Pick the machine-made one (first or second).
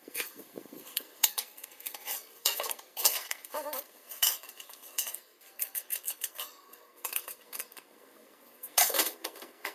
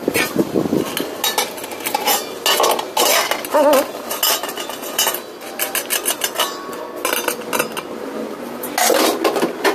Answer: first